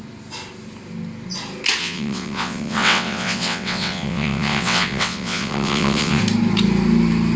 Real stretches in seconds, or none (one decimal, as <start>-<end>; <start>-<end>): 0.0-1.8; 6.2-7.4